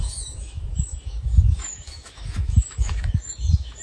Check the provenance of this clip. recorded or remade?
remade